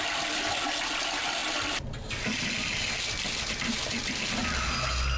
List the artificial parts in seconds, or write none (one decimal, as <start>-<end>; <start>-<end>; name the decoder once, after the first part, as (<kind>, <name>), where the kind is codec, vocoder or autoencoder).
none